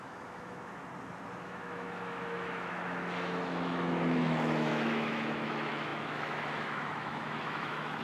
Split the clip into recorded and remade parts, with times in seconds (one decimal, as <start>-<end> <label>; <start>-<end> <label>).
0.0-0.8 remade; 0.8-1.4 recorded; 1.4-8.0 remade